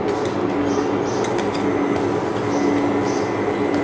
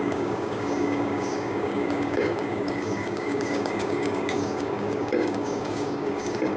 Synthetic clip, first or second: second